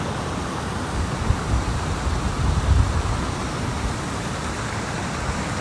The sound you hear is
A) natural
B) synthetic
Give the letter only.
A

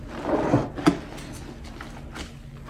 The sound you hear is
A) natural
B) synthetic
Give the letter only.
A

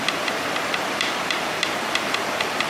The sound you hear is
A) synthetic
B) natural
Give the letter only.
A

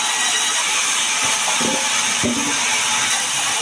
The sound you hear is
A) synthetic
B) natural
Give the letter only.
B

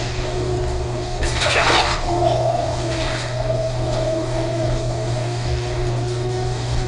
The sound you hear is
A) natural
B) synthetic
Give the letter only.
B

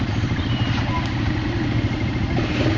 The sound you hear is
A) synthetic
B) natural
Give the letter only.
B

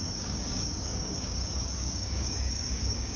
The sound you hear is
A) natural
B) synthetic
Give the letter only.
B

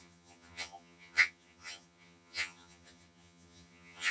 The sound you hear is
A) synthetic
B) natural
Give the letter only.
A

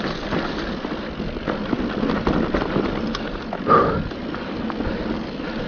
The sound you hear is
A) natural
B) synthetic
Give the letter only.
A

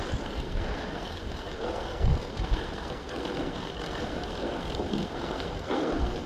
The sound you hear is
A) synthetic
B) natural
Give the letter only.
A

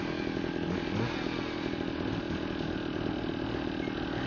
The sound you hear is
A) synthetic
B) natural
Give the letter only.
B